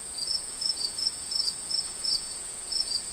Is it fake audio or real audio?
fake